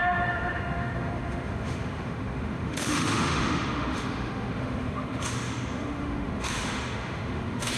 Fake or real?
fake